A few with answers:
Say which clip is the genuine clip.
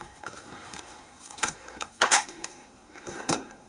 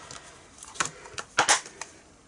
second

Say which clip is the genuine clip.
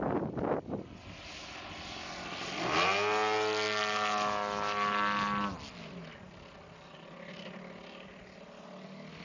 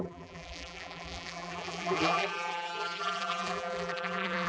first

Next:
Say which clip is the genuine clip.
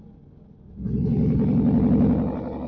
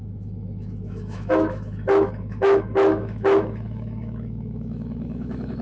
first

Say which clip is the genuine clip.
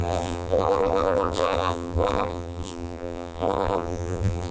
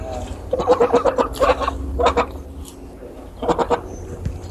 second